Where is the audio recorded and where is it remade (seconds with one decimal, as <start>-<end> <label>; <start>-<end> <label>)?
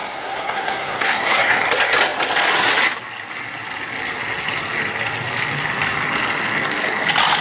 0.0-1.6 remade; 1.6-7.4 recorded